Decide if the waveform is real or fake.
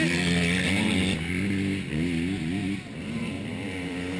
real